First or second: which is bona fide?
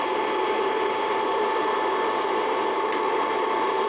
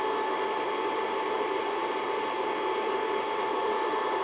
second